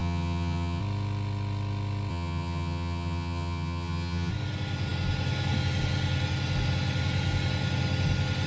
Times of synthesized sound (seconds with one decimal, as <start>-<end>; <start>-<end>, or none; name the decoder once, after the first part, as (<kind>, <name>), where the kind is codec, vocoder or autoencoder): 0.0-0.8 (vocoder, HiFi-GAN); 2.1-4.3